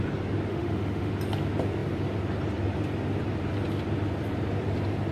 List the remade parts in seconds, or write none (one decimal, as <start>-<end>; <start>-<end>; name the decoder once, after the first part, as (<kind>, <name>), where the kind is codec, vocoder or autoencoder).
0.5-1.1 (autoencoder, DAC-VAE)